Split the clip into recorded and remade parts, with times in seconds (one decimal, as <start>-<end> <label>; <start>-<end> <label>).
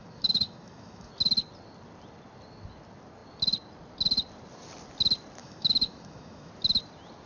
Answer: 0.0-1.1 remade; 1.1-5.4 recorded; 5.4-6.5 remade; 6.5-7.3 recorded